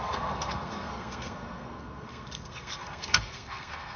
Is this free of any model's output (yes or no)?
no